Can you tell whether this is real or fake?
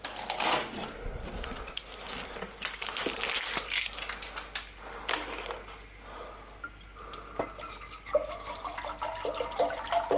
real